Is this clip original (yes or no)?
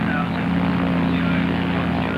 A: yes